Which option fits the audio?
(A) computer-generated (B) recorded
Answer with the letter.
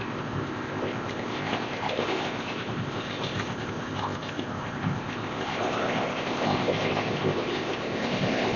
A